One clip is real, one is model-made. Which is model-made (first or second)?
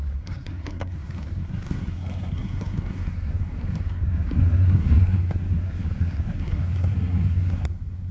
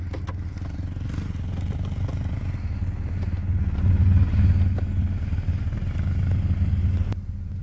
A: first